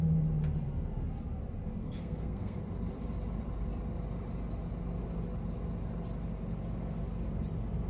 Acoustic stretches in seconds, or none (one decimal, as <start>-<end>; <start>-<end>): 0.0-1.8; 2.6-7.9